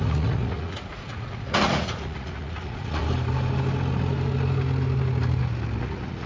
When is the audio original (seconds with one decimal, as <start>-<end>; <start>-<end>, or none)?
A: 3.0-5.8